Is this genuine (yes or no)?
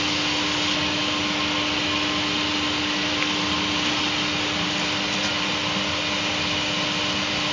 yes